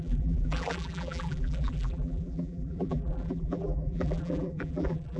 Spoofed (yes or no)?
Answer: yes